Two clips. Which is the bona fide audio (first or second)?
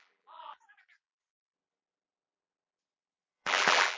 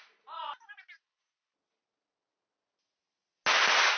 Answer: second